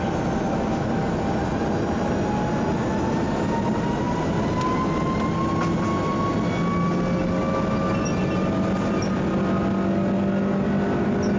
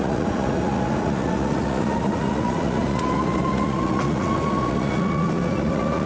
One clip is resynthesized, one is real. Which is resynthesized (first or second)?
second